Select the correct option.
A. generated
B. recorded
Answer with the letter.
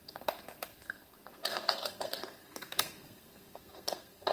A